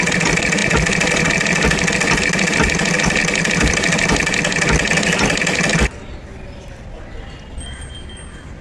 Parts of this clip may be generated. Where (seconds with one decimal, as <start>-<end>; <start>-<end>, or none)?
none